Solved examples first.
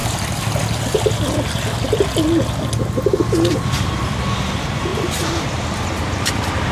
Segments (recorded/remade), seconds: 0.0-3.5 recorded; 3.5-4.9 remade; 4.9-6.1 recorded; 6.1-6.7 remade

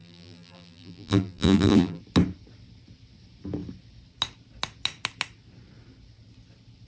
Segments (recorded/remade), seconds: 0.0-2.0 remade; 2.0-6.9 recorded